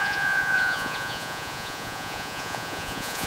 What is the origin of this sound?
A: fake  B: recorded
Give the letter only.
A